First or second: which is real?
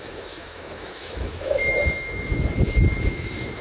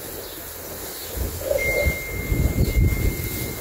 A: second